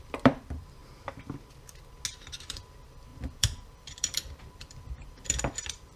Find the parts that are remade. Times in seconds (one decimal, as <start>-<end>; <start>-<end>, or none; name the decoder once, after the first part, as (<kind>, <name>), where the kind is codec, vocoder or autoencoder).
0.0-0.8 (vocoder, BigVGAN v2); 2.1-6.0